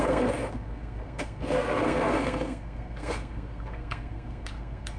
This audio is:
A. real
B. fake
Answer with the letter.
B